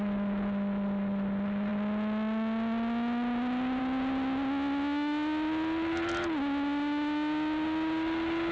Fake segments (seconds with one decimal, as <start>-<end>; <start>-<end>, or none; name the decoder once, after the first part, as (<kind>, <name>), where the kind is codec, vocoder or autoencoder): none